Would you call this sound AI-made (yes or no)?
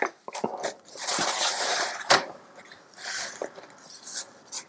no